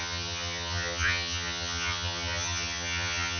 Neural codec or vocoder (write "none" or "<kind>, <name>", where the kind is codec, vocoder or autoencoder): vocoder, HiFi-GAN